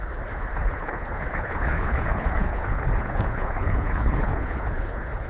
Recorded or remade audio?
remade